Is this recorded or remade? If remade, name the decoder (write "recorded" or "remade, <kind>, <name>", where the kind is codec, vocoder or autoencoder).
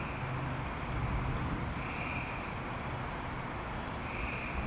recorded